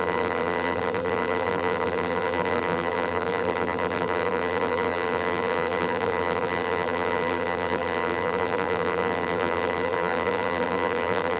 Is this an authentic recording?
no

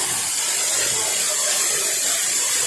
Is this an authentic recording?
yes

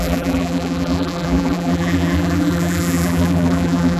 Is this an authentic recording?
no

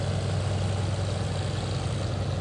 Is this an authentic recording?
yes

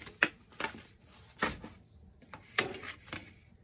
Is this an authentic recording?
yes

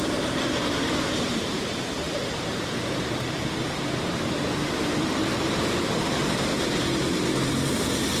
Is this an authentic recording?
no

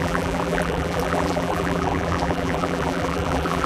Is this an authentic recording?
no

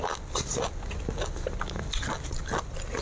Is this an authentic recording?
yes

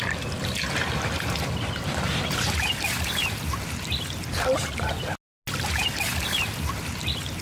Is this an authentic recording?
yes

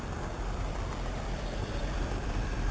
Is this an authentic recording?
no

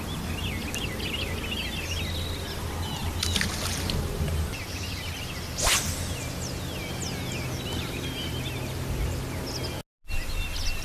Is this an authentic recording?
yes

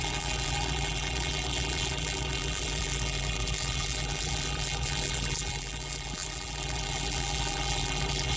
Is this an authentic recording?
no